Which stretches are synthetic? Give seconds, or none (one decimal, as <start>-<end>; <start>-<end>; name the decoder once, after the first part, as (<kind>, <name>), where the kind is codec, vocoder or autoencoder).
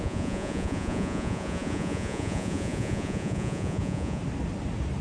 0.0-4.2 (vocoder, Vocos)